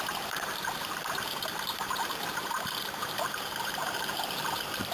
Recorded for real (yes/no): no